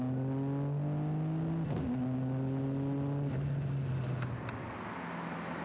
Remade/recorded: recorded